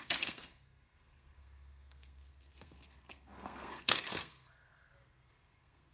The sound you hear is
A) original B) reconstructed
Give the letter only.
B